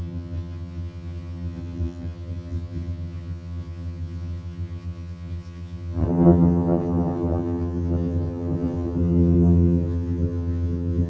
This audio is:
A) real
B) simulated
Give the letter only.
B